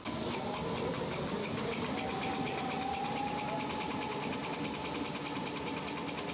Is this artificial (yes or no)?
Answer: no